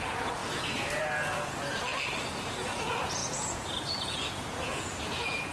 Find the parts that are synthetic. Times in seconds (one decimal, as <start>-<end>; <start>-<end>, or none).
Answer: 0.0-1.8; 2.5-5.5